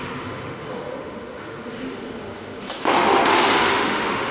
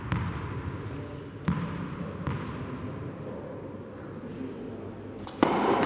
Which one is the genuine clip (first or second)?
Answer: second